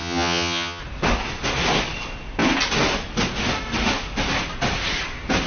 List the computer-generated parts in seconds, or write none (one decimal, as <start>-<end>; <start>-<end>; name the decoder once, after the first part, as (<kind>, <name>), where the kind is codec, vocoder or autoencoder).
0.0-0.8 (vocoder, HiFi-GAN)